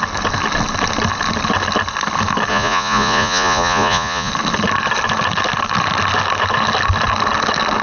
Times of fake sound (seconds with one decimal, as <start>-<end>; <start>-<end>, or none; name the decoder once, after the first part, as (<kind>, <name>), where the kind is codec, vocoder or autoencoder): 2.5-4.3 (vocoder, Vocos)